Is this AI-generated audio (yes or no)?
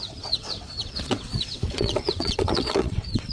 yes